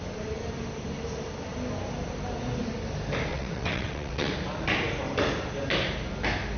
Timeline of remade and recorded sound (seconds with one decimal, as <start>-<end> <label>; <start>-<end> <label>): 0.0-3.3 recorded; 3.3-4.3 remade; 4.3-6.6 recorded

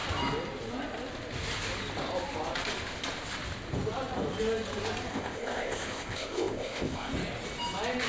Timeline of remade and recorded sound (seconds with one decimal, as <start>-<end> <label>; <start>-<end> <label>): 0.0-5.1 recorded; 5.1-7.1 remade; 7.1-8.1 recorded

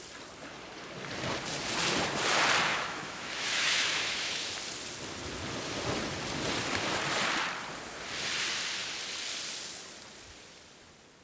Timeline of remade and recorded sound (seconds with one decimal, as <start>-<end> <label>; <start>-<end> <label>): 0.0-2.7 recorded; 2.7-4.5 remade; 4.5-11.2 recorded

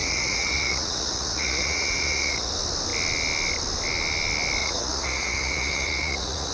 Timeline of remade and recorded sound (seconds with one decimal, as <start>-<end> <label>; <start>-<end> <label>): 0.0-2.5 remade; 2.5-4.6 recorded; 4.6-6.5 remade